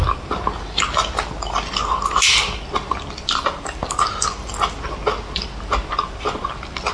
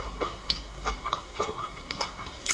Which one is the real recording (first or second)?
first